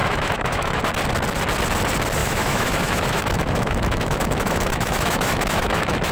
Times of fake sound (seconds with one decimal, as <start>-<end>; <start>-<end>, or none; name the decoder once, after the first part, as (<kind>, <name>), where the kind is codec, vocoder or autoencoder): 0.0-0.8 (autoencoder, DAC-VAE); 2.2-6.1